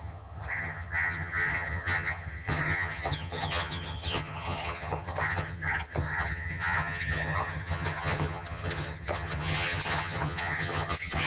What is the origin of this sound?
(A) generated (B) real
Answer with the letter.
A